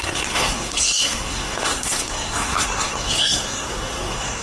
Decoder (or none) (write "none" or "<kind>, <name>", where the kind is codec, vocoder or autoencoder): codec, SNAC